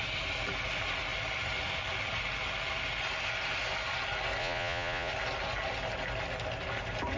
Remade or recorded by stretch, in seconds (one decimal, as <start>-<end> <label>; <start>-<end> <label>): 0.0-4.4 recorded; 4.4-5.1 remade; 5.1-7.2 recorded